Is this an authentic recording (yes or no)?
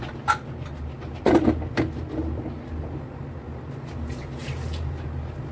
yes